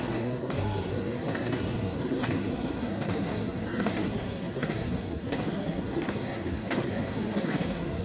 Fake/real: fake